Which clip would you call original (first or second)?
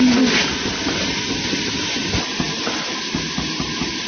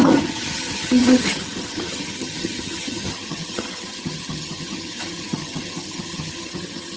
first